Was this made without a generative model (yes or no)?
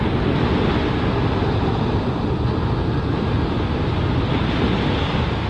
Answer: yes